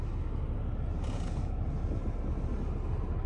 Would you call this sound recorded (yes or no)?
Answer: yes